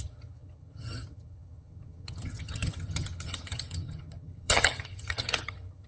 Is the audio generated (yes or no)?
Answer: yes